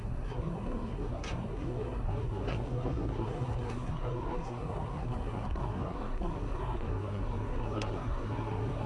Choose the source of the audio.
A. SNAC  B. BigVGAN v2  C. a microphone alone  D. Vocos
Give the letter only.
A